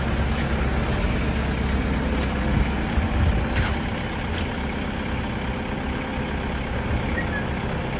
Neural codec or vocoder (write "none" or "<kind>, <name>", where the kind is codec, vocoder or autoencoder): none